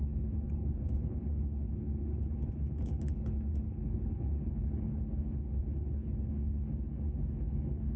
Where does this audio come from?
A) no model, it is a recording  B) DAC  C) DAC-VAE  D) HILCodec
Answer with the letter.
D